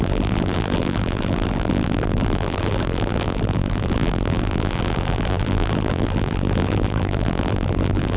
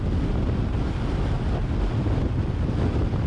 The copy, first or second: first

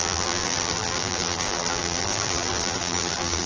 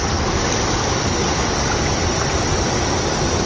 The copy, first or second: first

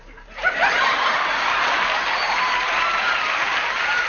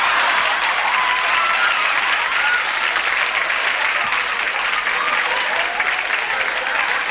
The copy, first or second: first